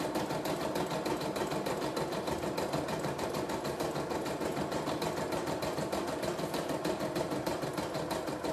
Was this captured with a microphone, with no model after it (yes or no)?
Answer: yes